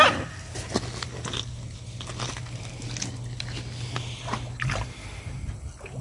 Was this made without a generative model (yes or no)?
yes